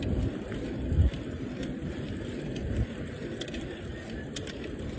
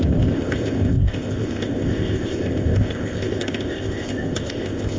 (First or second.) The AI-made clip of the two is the second